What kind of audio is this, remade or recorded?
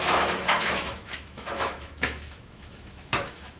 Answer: remade